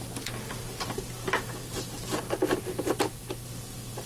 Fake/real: real